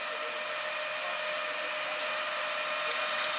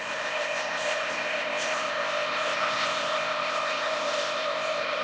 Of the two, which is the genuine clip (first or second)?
first